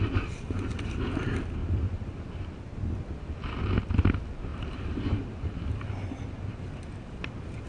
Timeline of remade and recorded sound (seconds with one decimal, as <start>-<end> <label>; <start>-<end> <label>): 0.0-7.7 recorded

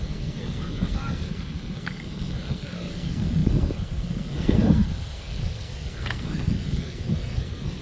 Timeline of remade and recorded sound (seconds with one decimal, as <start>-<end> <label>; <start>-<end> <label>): 0.0-7.8 remade

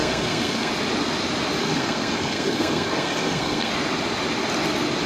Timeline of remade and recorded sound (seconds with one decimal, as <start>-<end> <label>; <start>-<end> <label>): 0.0-0.7 remade; 0.7-1.6 recorded; 1.6-3.7 remade; 3.7-5.1 recorded

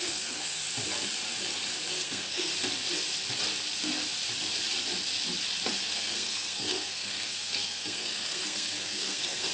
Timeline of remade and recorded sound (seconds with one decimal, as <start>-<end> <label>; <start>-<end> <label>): 0.0-0.6 remade; 0.6-1.9 recorded; 1.9-2.5 remade; 2.5-5.8 recorded; 5.8-9.5 remade